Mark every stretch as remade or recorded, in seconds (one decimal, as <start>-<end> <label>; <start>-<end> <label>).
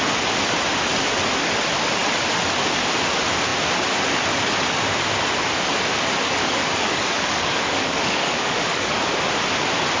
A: 0.0-6.4 recorded; 6.4-9.0 remade; 9.0-10.0 recorded